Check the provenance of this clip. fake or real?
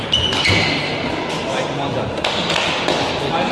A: real